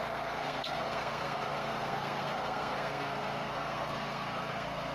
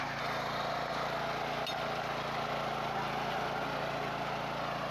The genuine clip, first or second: second